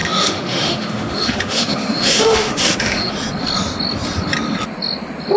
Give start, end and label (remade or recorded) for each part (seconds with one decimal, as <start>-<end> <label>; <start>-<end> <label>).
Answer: 0.0-3.1 remade; 3.1-5.4 recorded